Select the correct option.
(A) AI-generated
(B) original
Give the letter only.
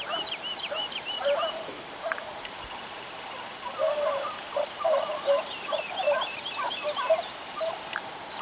A